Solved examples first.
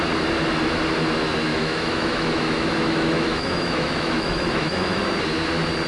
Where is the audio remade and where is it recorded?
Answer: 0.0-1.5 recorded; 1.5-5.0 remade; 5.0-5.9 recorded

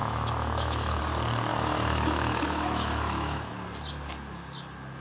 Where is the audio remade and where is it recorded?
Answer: 0.0-1.0 remade; 1.0-1.5 recorded; 1.5-3.5 remade; 3.5-5.0 recorded

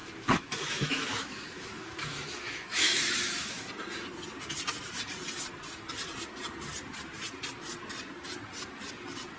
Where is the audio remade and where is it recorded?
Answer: 0.0-3.6 remade; 3.6-9.4 recorded

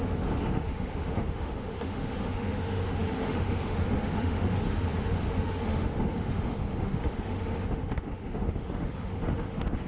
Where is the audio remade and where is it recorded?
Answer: 0.0-9.9 remade